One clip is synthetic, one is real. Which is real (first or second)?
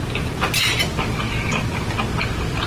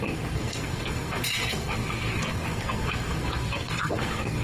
first